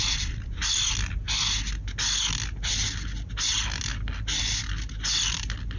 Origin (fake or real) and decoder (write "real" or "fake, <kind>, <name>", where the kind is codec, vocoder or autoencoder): real